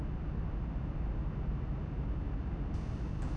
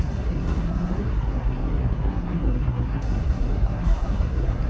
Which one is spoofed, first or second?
second